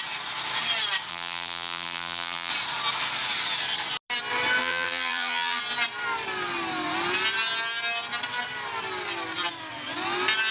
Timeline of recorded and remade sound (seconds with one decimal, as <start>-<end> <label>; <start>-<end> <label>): 0.0-1.1 recorded; 1.1-2.5 remade; 2.5-4.6 recorded; 4.6-5.6 remade; 5.6-10.5 recorded